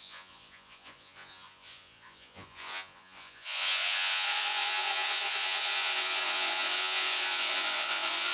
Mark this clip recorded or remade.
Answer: remade